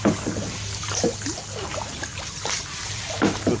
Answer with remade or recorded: recorded